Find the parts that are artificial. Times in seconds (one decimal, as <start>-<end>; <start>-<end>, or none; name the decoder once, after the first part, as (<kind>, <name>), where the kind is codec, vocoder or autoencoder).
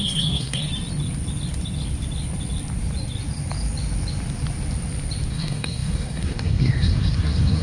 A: 0.0-0.7 (codec, SNAC); 5.3-7.6